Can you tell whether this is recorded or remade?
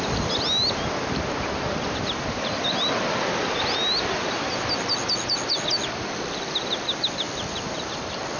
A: recorded